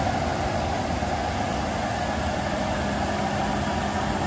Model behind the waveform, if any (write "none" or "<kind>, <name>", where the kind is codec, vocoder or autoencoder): none